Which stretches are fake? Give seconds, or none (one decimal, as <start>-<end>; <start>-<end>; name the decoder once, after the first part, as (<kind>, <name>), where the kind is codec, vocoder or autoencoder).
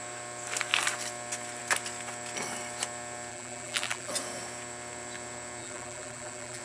3.3-4.1 (vocoder, BigVGAN v2); 5.6-6.6